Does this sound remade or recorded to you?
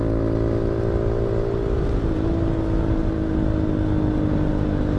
recorded